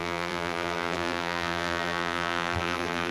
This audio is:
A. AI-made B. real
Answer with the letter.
A